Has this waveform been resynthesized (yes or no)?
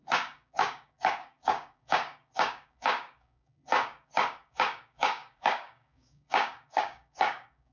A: yes